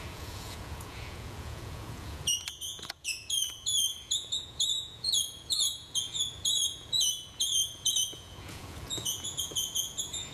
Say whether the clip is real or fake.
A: fake